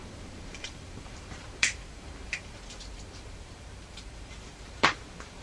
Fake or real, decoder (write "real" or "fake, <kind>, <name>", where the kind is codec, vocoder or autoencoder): fake, vocoder, BigVGAN v2